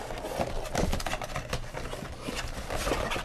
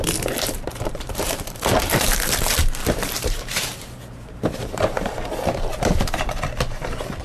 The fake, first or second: second